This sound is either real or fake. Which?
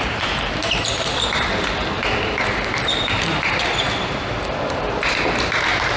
fake